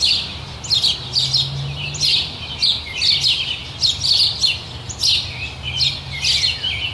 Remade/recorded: recorded